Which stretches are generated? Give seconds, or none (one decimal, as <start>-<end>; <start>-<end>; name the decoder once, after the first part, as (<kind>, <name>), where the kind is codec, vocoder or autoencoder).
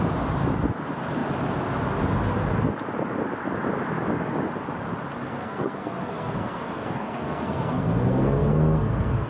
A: 5.3-9.3 (codec, SNAC)